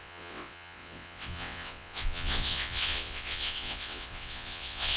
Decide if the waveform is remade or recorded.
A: remade